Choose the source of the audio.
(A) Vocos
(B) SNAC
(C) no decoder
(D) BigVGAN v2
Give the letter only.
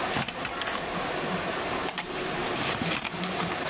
D